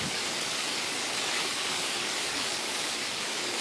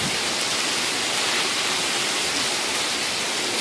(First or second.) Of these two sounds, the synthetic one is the first